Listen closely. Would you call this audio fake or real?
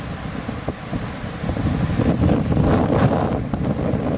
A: real